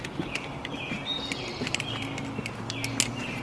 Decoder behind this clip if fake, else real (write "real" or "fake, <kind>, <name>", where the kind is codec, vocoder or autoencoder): real